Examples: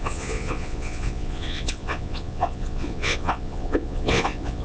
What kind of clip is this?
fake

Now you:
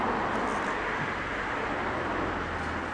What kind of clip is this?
real